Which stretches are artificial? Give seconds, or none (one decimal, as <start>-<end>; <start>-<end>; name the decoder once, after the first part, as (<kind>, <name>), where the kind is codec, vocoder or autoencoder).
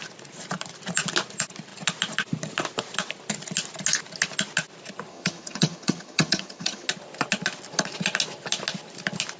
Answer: 5.1-6.9 (vocoder, HiFi-GAN)